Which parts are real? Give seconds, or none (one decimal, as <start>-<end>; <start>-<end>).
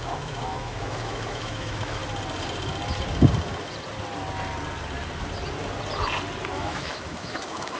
2.0-6.6